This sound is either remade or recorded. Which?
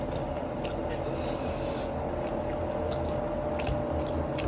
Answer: recorded